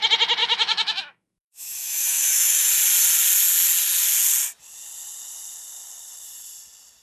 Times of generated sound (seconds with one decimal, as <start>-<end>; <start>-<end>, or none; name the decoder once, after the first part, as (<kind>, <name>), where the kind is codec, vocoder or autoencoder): 0.4-2.7 (autoencoder, DAC-VAE)